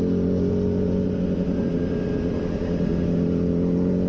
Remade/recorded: recorded